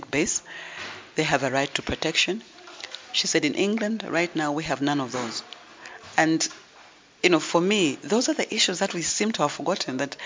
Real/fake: real